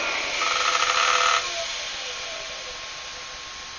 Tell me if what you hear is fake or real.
real